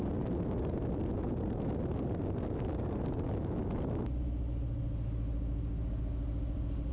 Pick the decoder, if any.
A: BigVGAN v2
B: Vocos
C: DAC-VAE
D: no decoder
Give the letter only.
D